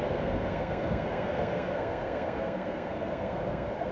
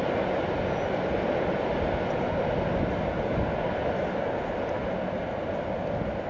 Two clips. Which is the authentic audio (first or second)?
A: second